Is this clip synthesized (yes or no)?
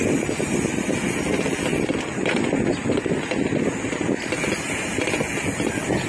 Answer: no